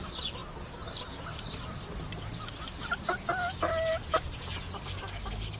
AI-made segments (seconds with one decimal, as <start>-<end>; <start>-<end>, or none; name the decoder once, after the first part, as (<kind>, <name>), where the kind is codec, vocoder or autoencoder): none